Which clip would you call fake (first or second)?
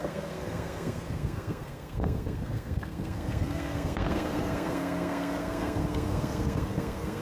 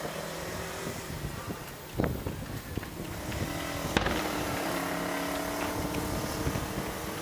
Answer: first